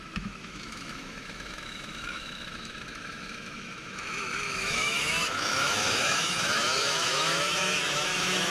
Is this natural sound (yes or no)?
no